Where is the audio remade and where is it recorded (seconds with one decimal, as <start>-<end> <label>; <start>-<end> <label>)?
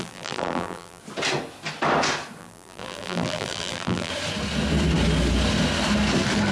0.0-1.0 remade; 1.0-2.4 recorded; 2.4-4.1 remade; 4.1-6.5 recorded